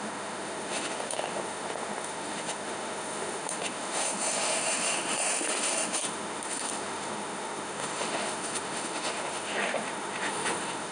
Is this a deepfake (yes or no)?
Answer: yes